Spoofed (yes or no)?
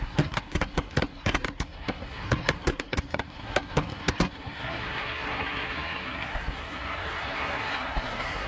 yes